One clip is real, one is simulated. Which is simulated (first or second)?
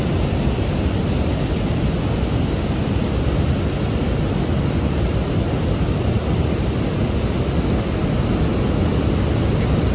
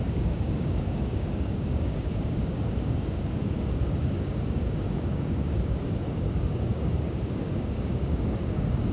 second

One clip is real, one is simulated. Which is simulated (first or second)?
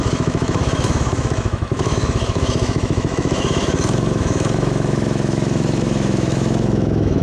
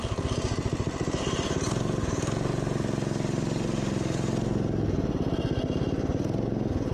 first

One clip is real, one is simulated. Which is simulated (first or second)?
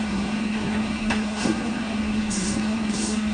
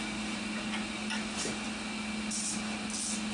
first